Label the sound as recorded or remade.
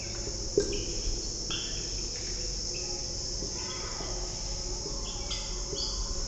recorded